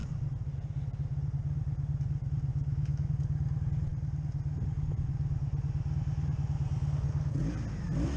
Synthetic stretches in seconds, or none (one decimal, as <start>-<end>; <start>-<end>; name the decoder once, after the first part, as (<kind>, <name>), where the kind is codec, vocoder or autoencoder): 2.5-3.1 (autoencoder, DAC-VAE)